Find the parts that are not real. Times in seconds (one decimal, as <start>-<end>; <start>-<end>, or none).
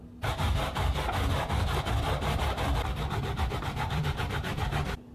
2.7-4.2